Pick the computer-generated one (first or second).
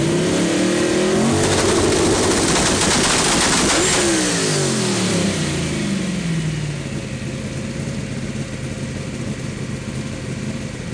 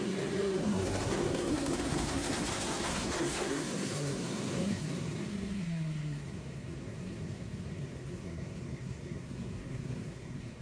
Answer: second